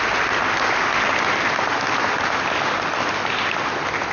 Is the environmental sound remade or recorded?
recorded